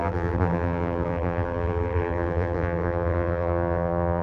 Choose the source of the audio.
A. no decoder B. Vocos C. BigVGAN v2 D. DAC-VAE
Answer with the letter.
C